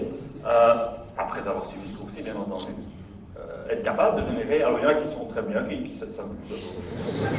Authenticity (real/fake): fake